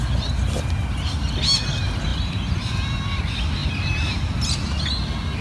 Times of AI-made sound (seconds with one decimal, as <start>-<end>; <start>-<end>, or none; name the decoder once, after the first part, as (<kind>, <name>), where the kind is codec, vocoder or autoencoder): none